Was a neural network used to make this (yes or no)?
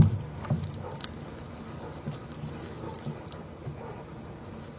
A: no